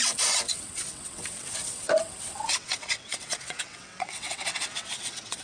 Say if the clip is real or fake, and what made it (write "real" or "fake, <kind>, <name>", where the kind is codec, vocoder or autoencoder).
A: fake, vocoder, WaveNeXt